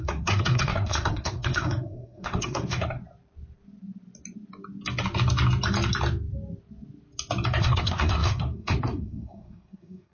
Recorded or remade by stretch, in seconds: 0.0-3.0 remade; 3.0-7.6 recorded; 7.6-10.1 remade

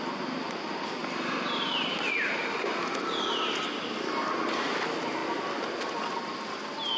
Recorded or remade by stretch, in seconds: 0.0-7.0 recorded

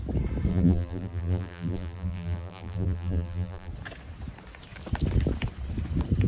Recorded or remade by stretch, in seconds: 0.0-0.5 recorded; 0.5-3.7 remade; 3.7-6.3 recorded

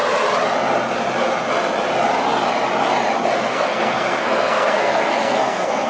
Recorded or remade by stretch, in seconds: 0.0-3.5 recorded; 3.5-5.9 remade